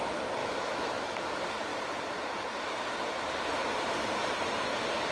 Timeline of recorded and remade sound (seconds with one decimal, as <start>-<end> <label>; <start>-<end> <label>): 0.0-0.4 recorded; 0.4-1.2 remade; 1.2-5.1 recorded